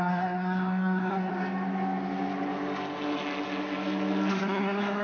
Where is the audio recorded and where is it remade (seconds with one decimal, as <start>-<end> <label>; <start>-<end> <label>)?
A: 0.0-1.3 remade; 1.3-4.3 recorded; 4.3-5.0 remade